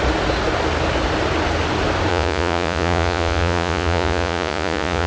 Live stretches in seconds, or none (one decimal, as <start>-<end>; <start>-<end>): 0.0-2.1

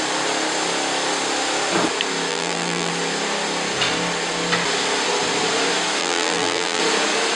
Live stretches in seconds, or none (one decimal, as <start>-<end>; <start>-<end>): 0.0-2.3; 2.9-6.0; 6.8-7.4

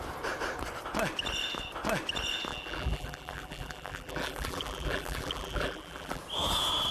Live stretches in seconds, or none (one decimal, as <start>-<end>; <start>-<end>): 0.0-2.5; 6.2-6.9

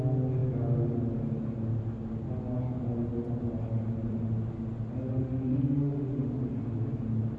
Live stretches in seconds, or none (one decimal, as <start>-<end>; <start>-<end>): 0.0-5.1; 6.3-7.4

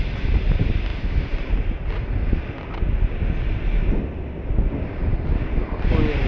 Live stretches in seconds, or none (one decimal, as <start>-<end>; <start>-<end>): 0.0-6.3